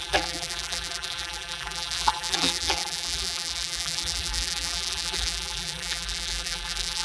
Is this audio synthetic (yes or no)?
yes